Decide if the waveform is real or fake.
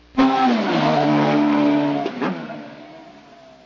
real